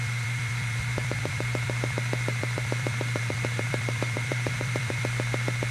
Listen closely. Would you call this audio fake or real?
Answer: fake